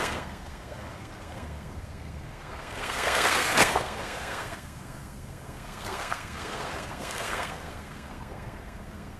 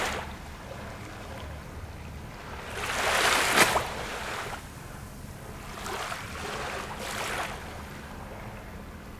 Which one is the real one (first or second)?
second